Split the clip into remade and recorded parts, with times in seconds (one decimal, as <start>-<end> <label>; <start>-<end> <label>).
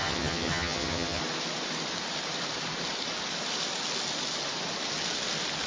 0.0-1.2 remade; 1.2-5.7 recorded